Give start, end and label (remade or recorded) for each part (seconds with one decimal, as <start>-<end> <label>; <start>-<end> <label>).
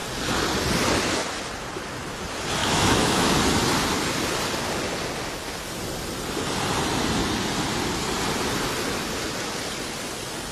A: 0.0-2.6 recorded; 2.6-3.3 remade; 3.3-10.5 recorded